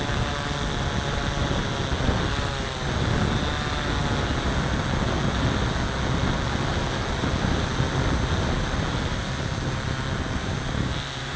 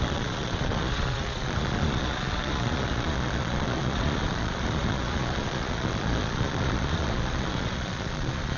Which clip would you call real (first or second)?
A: first